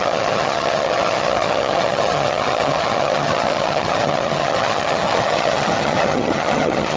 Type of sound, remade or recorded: remade